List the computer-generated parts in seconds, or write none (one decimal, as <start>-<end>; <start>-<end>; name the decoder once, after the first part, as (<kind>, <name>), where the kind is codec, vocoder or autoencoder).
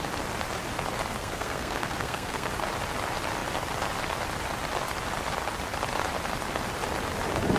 1.2-2.5 (codec, SNAC)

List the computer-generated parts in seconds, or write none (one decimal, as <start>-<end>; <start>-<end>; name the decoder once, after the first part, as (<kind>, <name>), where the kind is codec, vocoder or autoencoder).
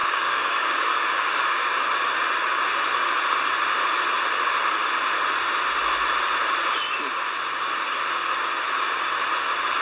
0.0-1.8 (codec, DAC)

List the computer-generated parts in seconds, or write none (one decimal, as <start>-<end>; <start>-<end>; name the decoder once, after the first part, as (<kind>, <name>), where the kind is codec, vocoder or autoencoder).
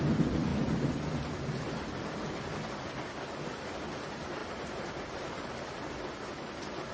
4.4-6.9 (vocoder, BigVGAN v2)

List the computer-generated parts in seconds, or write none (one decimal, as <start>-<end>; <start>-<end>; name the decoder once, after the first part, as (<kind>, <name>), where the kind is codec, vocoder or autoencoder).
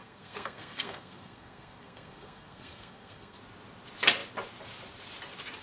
0.0-3.4 (codec, SNAC)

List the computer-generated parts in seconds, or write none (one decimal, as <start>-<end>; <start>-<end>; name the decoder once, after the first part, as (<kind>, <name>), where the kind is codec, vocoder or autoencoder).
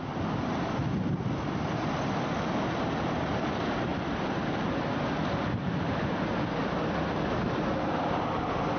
none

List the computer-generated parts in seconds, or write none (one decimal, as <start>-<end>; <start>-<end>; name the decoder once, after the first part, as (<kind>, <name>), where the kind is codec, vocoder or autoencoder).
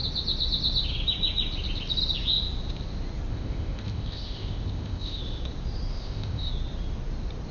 3.3-5.2 (codec, ZipCodec); 5.9-6.5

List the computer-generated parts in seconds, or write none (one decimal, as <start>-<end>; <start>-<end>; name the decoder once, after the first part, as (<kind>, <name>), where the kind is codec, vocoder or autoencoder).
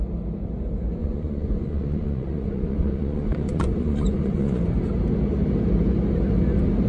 1.0-4.6 (vocoder, Vocos)